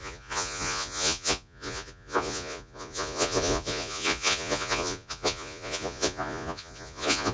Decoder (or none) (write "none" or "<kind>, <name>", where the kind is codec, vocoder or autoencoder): vocoder, Vocos